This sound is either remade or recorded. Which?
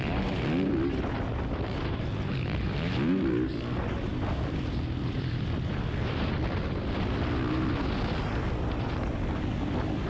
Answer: recorded